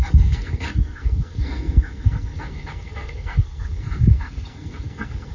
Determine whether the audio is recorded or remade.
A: remade